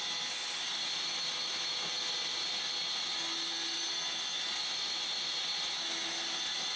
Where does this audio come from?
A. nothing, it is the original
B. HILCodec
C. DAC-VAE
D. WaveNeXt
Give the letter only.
A